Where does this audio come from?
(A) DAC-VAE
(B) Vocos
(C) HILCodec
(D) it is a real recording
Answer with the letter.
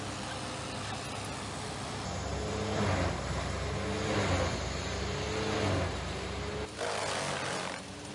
D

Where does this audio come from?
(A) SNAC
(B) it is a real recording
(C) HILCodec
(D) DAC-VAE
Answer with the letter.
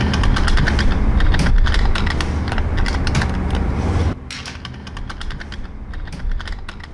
B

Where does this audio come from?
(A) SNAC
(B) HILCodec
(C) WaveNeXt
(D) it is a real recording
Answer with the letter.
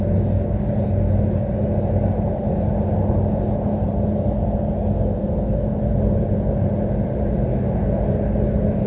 D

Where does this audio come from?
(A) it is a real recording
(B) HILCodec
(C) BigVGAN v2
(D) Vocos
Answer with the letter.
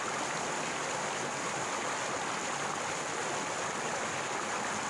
A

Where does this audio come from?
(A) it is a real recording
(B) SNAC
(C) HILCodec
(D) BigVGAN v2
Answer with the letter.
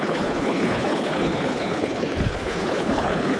C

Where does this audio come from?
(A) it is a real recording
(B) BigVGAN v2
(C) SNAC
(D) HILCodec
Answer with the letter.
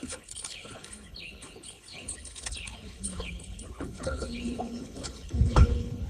D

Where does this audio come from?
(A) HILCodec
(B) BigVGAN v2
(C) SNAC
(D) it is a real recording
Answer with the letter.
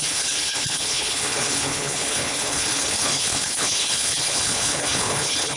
A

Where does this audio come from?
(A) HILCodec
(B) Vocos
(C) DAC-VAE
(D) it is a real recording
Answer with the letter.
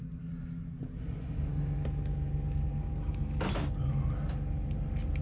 D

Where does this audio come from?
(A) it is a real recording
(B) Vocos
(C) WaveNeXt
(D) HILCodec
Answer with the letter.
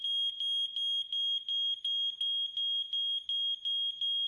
A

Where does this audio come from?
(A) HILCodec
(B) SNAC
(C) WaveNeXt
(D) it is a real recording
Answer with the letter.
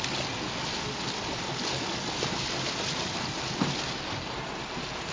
D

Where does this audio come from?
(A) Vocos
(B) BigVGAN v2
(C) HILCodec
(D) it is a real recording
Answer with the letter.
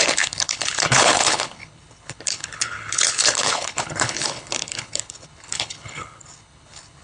C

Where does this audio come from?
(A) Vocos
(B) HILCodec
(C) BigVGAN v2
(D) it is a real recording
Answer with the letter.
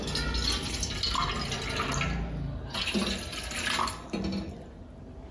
D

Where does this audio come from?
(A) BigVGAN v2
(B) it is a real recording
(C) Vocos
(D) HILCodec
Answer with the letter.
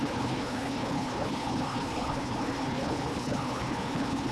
D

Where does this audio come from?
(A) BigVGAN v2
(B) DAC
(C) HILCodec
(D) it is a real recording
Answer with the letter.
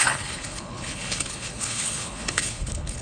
C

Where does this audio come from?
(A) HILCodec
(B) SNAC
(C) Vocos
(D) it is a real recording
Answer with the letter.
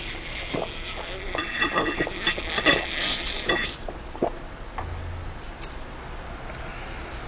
D